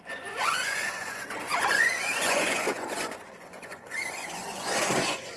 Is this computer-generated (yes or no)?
yes